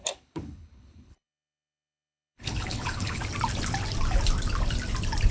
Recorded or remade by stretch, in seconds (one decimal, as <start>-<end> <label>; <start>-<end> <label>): 0.0-3.2 remade; 3.2-5.3 recorded